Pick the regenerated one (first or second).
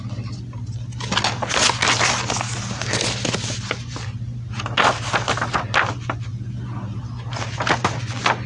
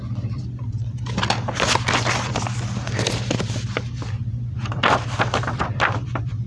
second